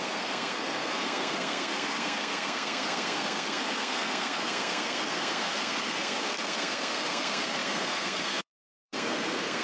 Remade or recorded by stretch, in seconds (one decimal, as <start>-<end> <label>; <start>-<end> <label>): 0.0-9.6 remade